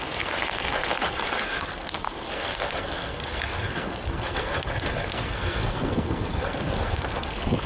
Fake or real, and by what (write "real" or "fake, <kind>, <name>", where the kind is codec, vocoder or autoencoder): fake, codec, SNAC